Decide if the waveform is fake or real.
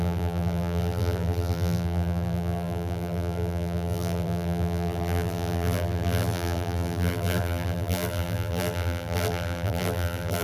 fake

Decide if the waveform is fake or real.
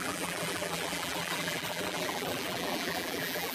fake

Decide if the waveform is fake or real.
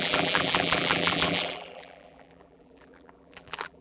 fake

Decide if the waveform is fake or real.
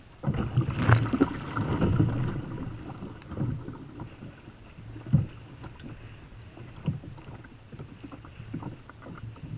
real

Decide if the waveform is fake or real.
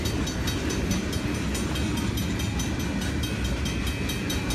real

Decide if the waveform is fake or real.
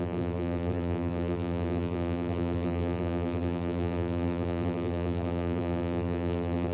fake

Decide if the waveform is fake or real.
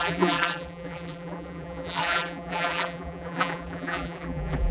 fake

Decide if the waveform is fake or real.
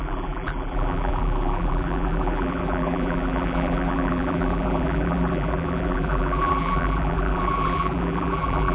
fake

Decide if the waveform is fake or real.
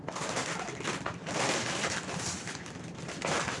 fake